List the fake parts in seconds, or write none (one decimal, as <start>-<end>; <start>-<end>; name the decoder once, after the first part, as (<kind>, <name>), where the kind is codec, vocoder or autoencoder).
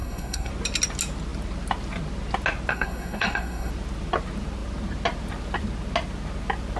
0.0-0.5 (codec, SNAC); 2.7-3.7